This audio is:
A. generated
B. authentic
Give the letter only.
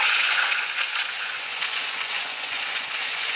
A